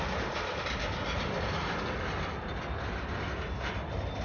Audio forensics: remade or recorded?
recorded